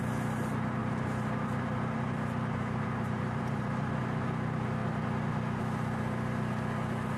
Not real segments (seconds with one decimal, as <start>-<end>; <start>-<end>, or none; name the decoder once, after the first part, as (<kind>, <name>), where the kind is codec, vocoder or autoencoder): 0.8-4.0 (vocoder, BigVGAN v2)